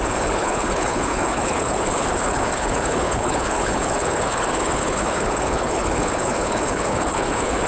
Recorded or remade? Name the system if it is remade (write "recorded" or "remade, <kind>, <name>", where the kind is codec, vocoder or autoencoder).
remade, codec, HILCodec